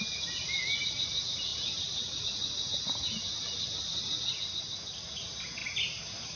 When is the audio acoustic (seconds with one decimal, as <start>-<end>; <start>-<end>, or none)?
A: 0.0-6.4